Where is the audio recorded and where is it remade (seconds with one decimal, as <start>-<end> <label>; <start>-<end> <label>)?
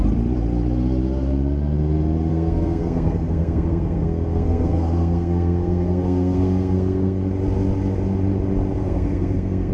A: 0.0-2.3 recorded; 2.3-7.2 remade; 7.2-8.8 recorded; 8.8-9.7 remade